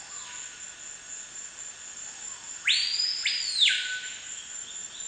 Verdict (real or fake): real